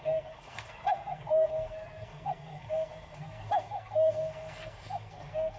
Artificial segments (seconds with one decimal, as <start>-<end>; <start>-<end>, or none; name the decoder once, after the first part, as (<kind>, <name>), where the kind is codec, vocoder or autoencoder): 0.0-5.6 (codec, SNAC)

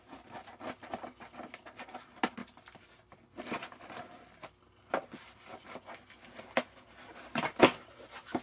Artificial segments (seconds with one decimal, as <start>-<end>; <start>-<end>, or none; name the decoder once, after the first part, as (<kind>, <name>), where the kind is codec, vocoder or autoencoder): none